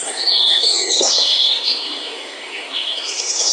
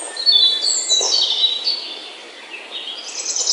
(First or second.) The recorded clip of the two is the second